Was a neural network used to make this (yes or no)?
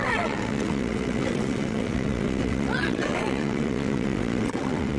yes